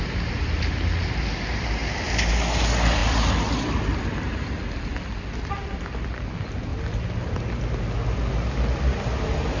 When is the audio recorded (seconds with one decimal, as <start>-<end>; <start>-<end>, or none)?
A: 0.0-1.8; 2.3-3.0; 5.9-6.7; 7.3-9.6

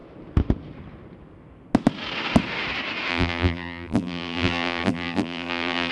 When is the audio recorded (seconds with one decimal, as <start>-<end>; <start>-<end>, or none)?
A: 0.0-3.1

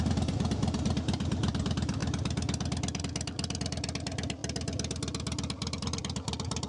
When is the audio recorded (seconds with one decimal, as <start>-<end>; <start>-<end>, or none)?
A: 2.0-3.0; 4.4-5.8

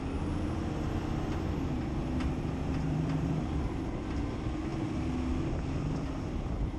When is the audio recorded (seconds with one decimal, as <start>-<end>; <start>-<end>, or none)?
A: 0.0-2.0; 3.8-6.8

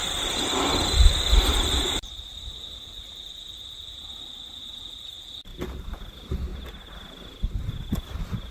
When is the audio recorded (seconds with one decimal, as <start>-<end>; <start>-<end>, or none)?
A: 4.0-8.5